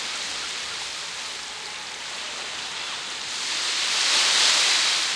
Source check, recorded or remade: recorded